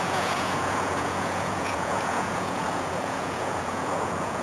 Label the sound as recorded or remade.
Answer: remade